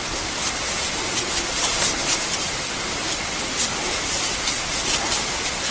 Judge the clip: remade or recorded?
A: remade